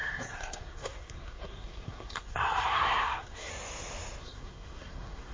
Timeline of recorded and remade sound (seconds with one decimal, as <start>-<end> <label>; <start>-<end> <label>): 0.0-3.5 remade; 3.5-4.2 recorded; 4.2-5.3 remade